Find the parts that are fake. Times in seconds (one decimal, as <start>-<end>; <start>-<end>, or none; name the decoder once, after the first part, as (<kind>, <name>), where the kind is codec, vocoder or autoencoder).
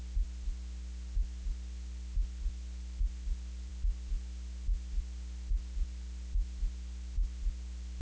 none